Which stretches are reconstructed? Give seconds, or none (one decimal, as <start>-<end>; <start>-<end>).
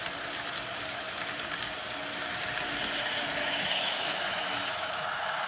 3.4-5.5